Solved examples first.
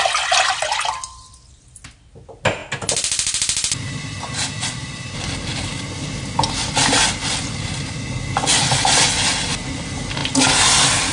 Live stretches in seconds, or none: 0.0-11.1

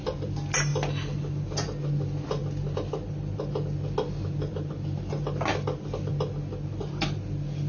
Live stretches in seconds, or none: 0.0-7.7